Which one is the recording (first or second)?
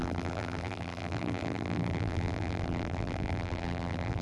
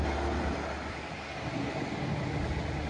second